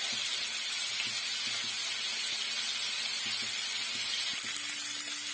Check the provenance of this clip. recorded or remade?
recorded